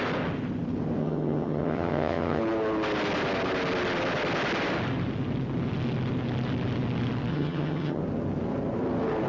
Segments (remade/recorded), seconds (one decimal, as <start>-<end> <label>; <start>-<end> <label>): 0.0-1.0 recorded; 1.0-2.4 remade; 2.4-7.3 recorded; 7.3-8.0 remade; 8.0-9.3 recorded